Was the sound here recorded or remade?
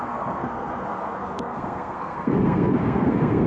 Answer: remade